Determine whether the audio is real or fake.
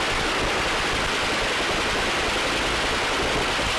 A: real